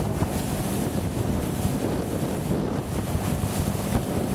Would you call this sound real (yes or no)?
no